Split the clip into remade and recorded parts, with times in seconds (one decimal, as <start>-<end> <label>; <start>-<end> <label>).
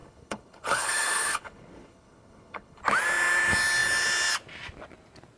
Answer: 0.0-2.8 remade; 2.8-5.4 recorded